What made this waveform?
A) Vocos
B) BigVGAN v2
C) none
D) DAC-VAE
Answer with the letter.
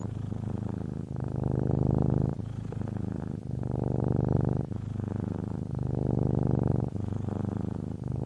C